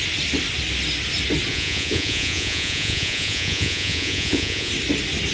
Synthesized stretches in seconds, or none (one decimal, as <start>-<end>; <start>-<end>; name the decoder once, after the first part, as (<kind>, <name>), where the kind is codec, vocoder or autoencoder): 1.5-4.7 (vocoder, Vocos)